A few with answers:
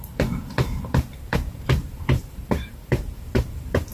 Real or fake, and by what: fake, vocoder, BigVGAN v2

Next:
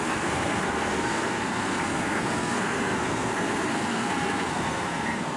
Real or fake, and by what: fake, codec, SNAC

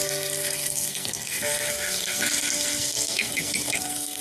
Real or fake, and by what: fake, codec, SNAC